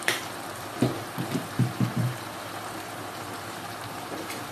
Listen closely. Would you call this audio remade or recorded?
remade